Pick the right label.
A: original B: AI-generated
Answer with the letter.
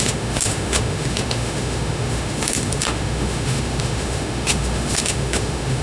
B